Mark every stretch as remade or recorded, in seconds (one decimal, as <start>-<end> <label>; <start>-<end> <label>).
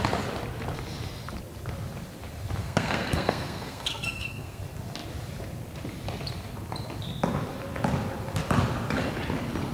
0.0-2.6 recorded; 2.6-4.6 remade; 4.6-9.7 recorded